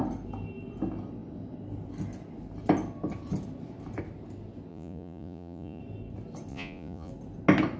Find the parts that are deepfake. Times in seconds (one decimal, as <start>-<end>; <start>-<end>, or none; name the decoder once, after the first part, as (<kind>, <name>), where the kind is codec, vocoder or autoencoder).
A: 4.7-5.8 (vocoder, Vocos); 6.5-7.1